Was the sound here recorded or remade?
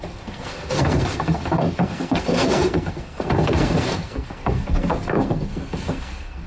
remade